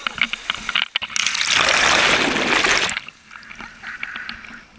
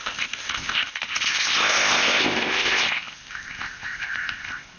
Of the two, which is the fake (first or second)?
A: second